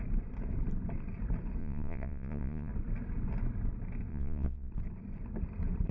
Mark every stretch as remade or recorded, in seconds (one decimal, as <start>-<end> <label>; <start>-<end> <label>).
0.0-1.6 recorded; 1.6-2.7 remade; 2.7-4.1 recorded; 4.1-4.7 remade; 4.7-5.9 recorded